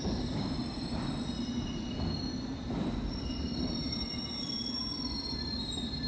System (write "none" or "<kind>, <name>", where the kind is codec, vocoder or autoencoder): vocoder, BigVGAN v2